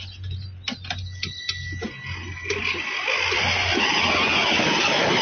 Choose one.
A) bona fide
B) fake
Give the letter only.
A